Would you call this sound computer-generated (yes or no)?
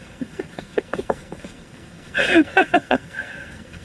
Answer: yes